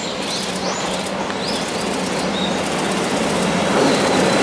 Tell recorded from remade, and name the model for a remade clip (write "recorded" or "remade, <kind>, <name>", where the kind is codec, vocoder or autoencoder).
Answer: recorded